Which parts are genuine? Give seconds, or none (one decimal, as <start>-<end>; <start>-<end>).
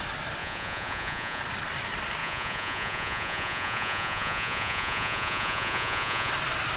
0.0-0.4; 1.4-2.2; 6.3-6.8